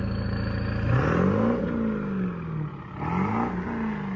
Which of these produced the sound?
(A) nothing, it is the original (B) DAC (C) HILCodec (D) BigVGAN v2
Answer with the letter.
A